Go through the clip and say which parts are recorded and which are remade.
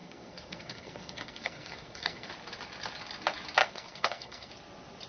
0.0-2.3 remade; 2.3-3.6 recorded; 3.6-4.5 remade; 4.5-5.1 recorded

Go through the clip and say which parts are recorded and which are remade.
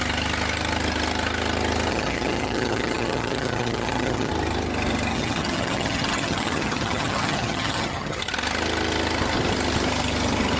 0.0-1.9 recorded; 1.9-4.3 remade; 4.3-5.1 recorded; 5.1-8.2 remade; 8.2-10.6 recorded